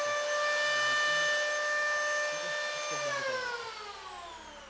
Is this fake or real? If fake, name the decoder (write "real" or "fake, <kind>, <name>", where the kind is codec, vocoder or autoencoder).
real